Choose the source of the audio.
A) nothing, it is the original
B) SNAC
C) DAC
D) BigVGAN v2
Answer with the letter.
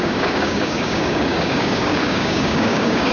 C